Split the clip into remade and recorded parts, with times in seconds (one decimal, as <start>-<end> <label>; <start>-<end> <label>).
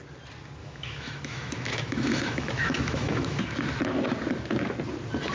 0.0-0.6 recorded; 0.6-3.4 remade; 3.4-5.3 recorded